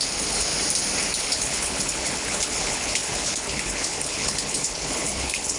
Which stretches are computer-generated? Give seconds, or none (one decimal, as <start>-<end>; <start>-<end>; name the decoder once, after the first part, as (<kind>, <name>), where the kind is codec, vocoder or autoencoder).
0.0-0.5 (codec, HILCodec); 1.2-5.6